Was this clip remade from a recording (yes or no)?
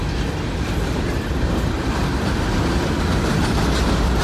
no